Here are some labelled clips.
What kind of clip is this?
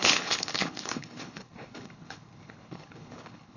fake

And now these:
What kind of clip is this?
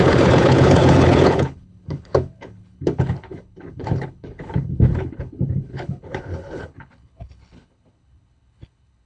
fake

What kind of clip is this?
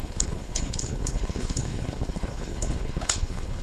fake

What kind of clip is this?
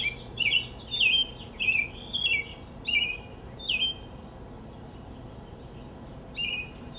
real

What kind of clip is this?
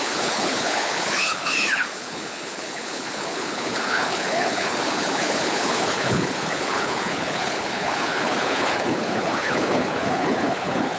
fake